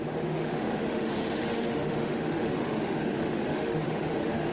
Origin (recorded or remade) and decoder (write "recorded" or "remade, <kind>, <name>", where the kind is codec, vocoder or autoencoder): remade, autoencoder, DAC-VAE